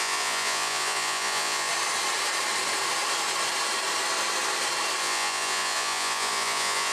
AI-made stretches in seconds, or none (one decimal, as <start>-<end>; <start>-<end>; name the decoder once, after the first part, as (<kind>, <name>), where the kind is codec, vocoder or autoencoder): 0.0-1.7 (vocoder, Vocos); 5.0-6.9